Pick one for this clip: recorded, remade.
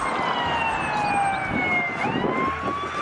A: recorded